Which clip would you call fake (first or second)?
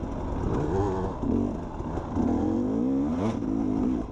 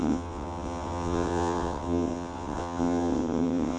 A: second